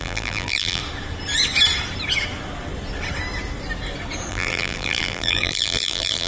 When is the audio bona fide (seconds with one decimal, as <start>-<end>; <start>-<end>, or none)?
0.8-4.3

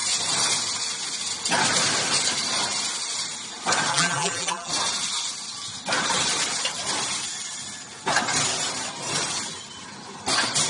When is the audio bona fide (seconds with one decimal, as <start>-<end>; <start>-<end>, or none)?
0.0-3.9; 4.7-10.7

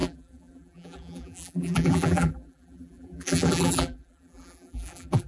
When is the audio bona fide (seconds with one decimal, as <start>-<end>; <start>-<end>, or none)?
none

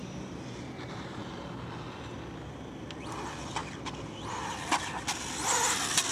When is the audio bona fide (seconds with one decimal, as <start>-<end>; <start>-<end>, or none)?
1.2-6.1

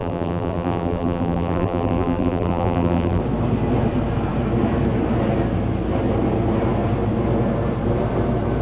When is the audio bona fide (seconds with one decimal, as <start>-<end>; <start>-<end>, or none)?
3.2-8.6